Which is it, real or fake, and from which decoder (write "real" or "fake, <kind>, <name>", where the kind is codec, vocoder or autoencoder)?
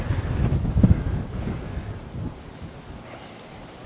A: real